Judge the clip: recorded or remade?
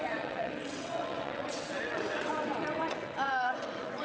remade